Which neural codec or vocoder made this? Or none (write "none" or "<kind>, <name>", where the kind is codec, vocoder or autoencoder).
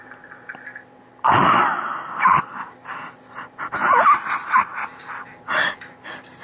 none